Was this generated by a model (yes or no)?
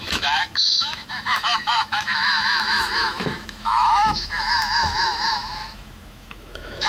yes